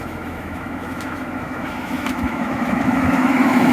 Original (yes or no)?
no